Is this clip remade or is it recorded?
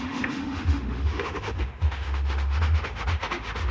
remade